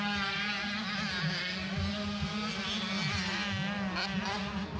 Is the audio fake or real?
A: real